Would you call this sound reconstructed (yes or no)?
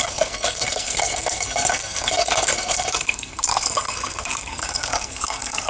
yes